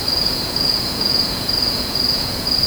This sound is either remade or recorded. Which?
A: remade